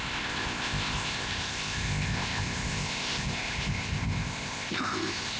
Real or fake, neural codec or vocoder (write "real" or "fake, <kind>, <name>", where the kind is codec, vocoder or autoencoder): fake, codec, ZipCodec